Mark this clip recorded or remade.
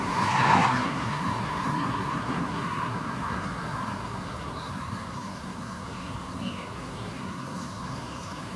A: remade